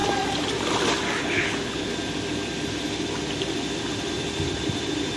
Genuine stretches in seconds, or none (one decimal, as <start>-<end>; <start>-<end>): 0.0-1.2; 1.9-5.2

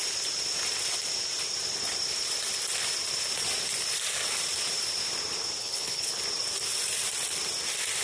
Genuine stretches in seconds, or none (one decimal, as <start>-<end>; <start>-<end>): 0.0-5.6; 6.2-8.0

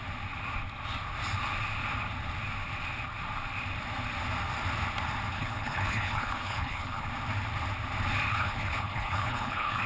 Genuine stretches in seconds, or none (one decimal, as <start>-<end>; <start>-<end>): 0.0-5.3; 7.1-8.3

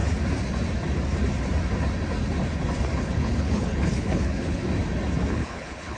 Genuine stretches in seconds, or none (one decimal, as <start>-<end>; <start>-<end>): 0.0-3.0; 4.6-5.3

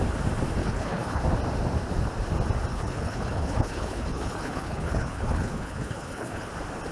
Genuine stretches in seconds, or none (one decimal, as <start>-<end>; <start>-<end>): 0.0-0.6; 1.2-2.7; 6.5-6.9

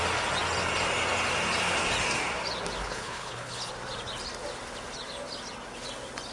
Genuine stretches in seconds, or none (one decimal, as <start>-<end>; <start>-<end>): 0.0-2.8; 3.7-6.3